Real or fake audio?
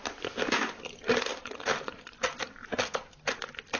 real